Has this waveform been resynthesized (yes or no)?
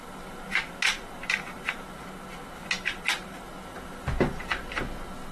no